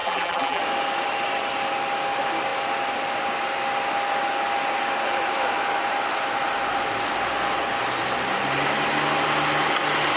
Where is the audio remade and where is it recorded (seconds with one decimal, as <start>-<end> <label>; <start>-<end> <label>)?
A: 0.0-0.6 remade; 0.6-10.2 recorded